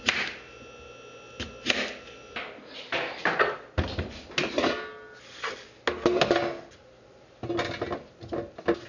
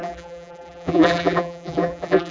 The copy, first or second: second